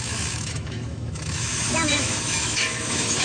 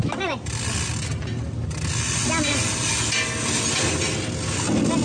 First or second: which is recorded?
second